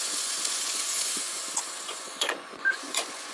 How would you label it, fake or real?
fake